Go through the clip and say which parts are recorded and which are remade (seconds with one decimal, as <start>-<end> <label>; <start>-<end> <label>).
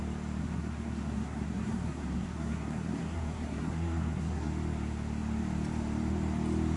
0.0-0.4 recorded; 0.4-4.5 remade; 4.5-6.8 recorded